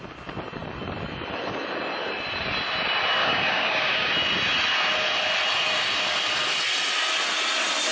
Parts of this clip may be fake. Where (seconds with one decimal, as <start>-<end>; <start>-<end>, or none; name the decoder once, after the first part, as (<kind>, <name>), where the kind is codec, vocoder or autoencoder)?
3.2-4.1 (codec, DAC)